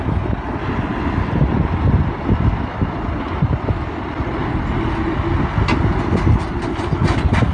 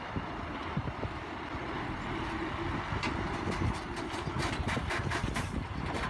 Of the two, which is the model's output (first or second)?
second